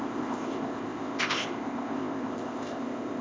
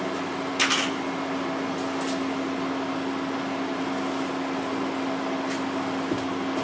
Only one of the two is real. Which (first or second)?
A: second